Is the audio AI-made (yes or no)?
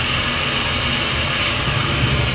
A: no